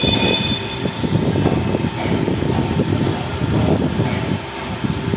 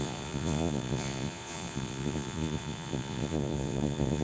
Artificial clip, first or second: second